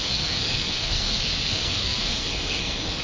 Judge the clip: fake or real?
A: fake